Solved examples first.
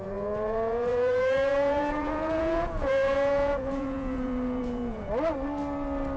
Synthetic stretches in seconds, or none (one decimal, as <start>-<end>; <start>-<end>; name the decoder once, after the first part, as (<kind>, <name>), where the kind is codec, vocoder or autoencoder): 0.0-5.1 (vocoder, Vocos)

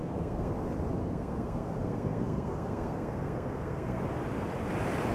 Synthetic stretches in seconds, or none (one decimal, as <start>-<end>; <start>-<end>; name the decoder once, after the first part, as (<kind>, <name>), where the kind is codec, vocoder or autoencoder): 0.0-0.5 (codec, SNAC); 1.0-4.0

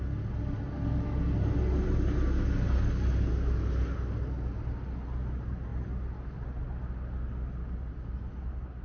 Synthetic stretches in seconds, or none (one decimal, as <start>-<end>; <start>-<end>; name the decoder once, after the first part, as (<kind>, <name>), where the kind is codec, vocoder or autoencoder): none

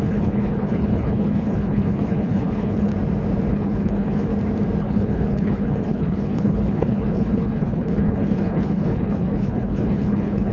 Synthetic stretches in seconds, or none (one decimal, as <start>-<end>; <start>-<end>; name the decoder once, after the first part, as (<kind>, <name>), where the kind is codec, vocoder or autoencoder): 0.0-2.9 (codec, HILCodec); 3.5-4.3; 4.8-10.5